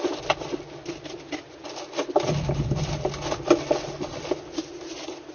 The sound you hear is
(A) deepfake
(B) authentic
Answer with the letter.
B